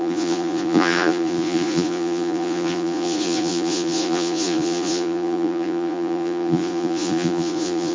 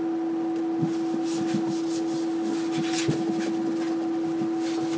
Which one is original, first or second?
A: second